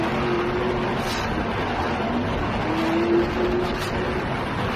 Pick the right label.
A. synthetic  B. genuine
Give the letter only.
B